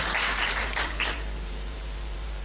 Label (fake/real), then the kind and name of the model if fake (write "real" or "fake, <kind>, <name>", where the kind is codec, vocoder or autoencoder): fake, vocoder, BigVGAN v2